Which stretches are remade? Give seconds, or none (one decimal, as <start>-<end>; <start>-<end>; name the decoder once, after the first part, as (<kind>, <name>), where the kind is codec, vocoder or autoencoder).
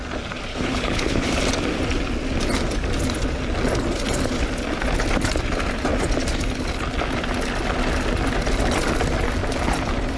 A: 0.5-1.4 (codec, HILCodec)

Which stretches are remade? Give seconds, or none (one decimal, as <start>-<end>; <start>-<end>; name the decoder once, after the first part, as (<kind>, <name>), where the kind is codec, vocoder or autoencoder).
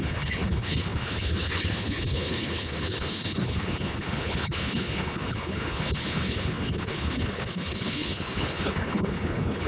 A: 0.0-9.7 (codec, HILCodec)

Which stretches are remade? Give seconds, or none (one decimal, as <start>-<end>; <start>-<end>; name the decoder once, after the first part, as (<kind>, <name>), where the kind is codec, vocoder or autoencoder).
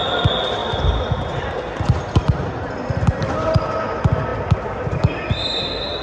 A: none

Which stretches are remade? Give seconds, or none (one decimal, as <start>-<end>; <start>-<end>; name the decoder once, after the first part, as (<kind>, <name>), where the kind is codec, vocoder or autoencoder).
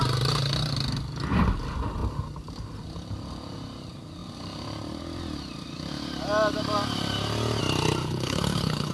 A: 8.0-8.9 (codec, HILCodec)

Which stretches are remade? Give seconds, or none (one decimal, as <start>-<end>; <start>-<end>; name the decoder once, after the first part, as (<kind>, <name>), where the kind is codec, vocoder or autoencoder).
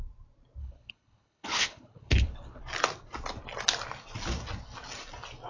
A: 0.6-2.6 (codec, HILCodec)